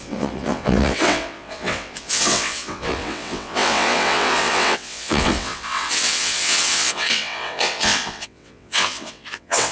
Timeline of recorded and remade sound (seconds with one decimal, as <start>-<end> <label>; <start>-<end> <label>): 0.0-9.7 remade